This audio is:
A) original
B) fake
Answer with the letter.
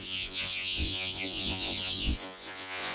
B